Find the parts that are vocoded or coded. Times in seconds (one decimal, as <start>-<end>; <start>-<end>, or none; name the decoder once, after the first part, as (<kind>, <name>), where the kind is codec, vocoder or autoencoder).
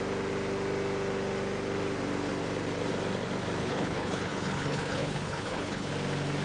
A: 3.6-5.9 (codec, HILCodec)